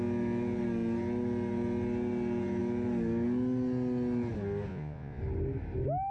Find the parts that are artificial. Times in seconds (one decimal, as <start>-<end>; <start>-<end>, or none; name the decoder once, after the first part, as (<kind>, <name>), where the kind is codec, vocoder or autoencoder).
4.7-5.2 (vocoder, Vocos)